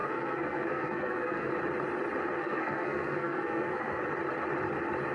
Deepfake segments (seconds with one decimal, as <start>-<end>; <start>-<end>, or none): 0.0-1.5; 2.4-4.0